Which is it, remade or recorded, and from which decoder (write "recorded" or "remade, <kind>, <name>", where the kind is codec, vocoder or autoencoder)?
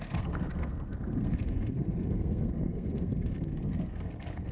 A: remade, codec, SNAC